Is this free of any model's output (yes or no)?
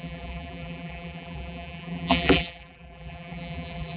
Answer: no